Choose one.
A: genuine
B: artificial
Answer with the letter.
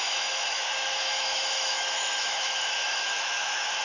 B